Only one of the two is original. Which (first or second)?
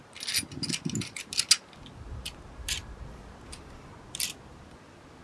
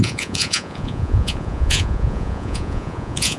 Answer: first